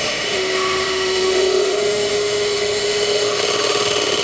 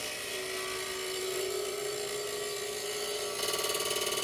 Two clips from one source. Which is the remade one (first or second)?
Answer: first